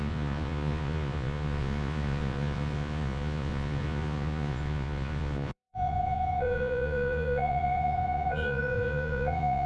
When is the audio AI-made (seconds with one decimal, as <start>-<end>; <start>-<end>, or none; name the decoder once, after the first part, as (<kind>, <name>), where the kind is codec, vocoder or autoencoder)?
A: 0.0-9.7 (vocoder, Vocos)